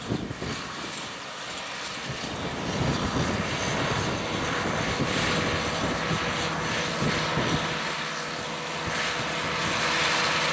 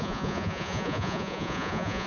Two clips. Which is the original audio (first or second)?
first